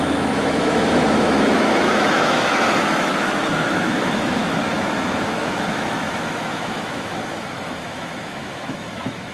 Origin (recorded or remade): remade